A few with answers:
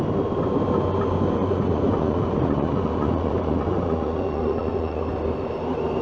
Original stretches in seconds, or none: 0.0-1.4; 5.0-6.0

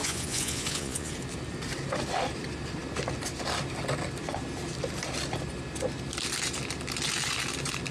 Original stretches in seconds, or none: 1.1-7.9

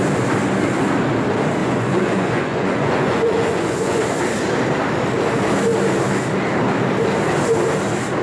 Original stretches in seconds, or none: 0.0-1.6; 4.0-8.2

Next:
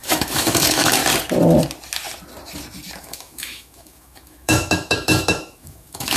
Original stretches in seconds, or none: 1.0-3.0

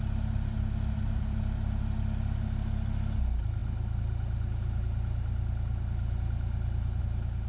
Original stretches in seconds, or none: 0.0-7.5

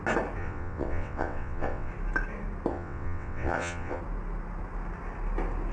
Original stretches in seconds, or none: 0.0-0.4; 1.9-2.7; 4.0-5.7

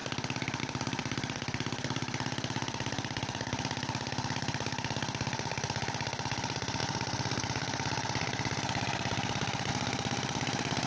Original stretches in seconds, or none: 0.0-1.0; 4.1-6.8; 9.7-10.9